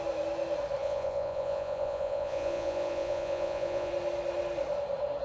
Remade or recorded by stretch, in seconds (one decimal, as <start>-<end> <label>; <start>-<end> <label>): 0.0-0.8 recorded; 0.8-3.9 remade; 3.9-5.2 recorded